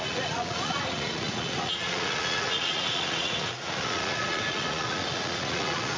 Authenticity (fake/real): fake